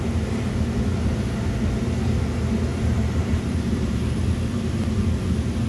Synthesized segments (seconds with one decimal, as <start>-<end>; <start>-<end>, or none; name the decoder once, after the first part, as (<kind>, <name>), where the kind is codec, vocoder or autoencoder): 2.7-4.2 (vocoder, BigVGAN v2)